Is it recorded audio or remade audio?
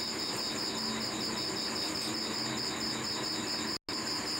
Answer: recorded